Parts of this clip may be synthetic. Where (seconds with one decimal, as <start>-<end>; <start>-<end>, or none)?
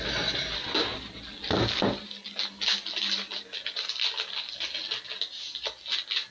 none